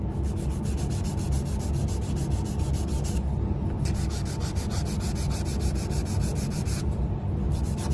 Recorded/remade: recorded